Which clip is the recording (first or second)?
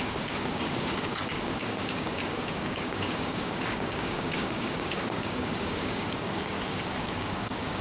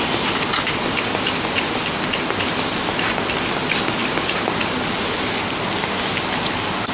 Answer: second